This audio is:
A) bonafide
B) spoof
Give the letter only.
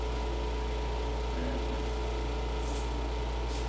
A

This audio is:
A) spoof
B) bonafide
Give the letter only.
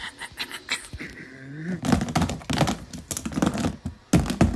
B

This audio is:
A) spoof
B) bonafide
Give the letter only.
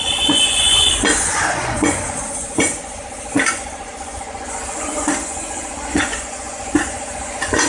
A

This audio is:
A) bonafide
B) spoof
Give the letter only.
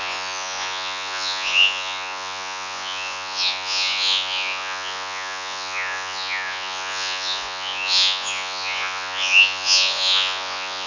B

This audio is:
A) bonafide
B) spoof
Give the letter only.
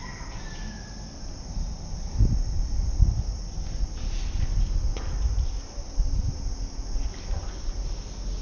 A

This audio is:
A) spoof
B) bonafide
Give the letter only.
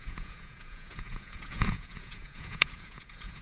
A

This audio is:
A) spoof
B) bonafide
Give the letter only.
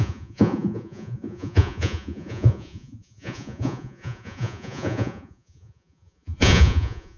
A